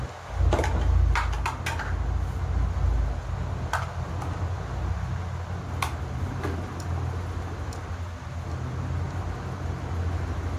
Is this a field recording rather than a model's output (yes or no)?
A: yes